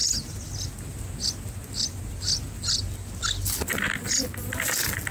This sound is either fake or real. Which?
real